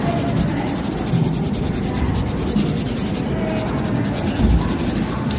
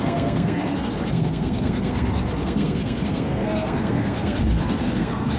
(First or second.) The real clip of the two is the first